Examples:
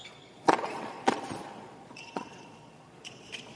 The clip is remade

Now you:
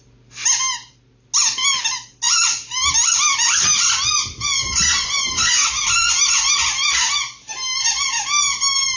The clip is recorded